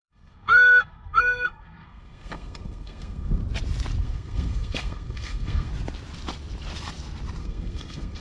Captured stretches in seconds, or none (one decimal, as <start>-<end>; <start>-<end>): 3.4-4.0; 5.7-7.4